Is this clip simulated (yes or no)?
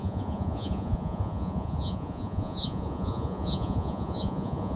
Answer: yes